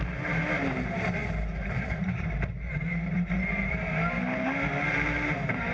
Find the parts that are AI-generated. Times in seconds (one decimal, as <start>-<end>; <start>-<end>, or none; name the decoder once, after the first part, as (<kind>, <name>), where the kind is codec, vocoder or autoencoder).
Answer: 0.0-5.7 (vocoder, BigVGAN v2)